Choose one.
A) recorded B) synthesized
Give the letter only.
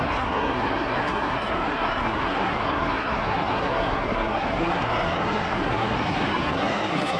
B